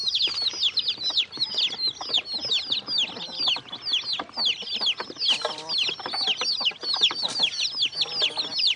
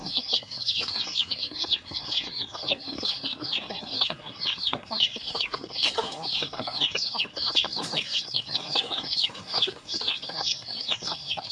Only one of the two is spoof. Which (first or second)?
second